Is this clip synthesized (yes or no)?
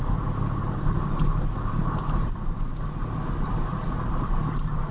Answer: no